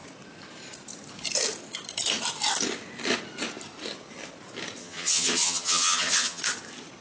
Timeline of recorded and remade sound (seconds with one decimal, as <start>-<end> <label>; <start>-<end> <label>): 0.0-4.8 recorded; 4.8-6.4 remade; 6.4-7.0 recorded